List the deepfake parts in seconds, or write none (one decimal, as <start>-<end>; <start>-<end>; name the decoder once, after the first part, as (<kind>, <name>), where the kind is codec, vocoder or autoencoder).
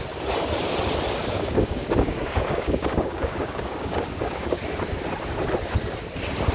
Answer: 1.2-4.6 (codec, DAC)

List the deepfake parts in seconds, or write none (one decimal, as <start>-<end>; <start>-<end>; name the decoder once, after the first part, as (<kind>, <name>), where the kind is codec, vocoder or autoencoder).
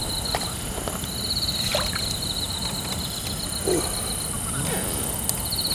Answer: none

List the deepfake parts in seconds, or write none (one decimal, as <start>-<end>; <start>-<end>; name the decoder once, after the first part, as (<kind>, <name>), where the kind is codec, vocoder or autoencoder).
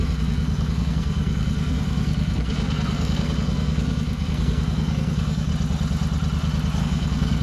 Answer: 0.0-5.5 (codec, SNAC); 6.8-7.4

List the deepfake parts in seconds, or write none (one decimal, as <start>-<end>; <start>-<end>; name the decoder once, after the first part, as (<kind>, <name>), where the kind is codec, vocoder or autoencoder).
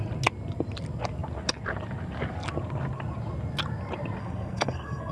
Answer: 4.2-5.1 (codec, SNAC)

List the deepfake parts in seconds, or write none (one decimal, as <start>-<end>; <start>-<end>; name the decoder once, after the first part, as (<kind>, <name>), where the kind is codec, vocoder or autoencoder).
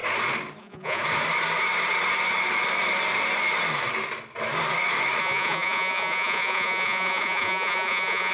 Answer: 0.6-1.0 (vocoder, Vocos); 5.2-8.3